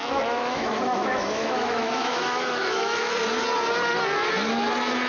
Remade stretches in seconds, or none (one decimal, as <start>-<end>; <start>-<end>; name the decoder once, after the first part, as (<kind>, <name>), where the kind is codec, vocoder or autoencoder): 0.0-3.1 (autoencoder, DAC-VAE)